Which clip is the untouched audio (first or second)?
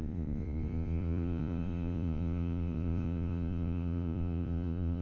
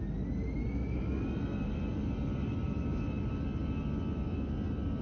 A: second